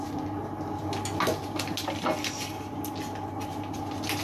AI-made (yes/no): no